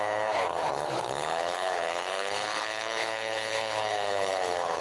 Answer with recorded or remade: remade